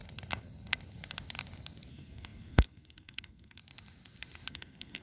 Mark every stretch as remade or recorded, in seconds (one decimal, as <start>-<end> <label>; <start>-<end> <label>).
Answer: 0.0-1.9 recorded; 1.9-3.6 remade; 3.6-4.5 recorded; 4.5-5.0 remade